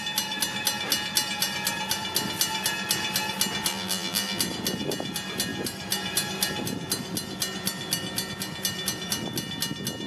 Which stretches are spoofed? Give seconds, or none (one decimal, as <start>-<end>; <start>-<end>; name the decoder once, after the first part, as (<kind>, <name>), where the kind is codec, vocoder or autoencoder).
3.7-4.4 (vocoder, BigVGAN v2)